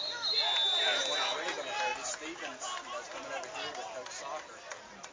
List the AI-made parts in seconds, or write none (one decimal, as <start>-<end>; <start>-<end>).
none